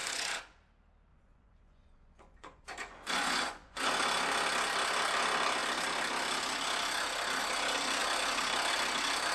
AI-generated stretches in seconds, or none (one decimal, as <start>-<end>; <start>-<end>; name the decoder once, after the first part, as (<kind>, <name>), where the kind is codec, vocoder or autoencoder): 0.0-0.6 (vocoder, Vocos); 1.1-3.9